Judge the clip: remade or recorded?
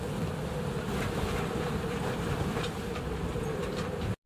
remade